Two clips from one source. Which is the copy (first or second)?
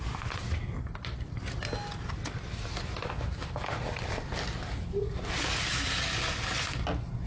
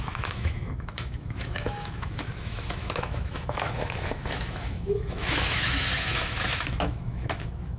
second